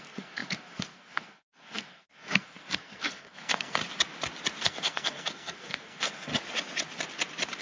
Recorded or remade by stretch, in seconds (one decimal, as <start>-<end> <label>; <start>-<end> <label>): 0.0-3.8 remade; 3.8-4.6 recorded; 4.6-6.3 remade; 6.3-7.6 recorded